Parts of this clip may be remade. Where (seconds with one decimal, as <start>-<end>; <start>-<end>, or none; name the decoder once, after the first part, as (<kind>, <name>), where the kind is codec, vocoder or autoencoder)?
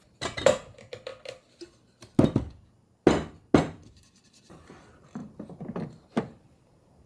0.0-1.1 (vocoder, BigVGAN v2); 3.6-5.2; 6.1-7.1